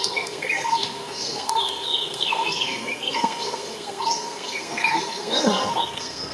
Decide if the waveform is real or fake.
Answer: fake